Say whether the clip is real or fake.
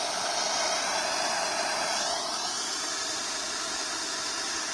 real